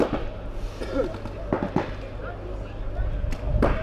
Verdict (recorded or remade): recorded